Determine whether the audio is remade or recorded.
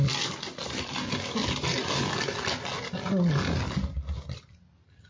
recorded